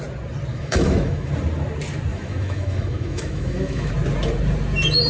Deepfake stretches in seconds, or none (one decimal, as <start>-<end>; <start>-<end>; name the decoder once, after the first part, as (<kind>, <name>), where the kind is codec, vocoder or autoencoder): 0.5-1.3 (autoencoder, DAC-VAE); 2.1-3.9